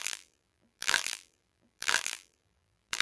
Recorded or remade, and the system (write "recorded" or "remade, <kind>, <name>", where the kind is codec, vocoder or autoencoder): remade, vocoder, BigVGAN v2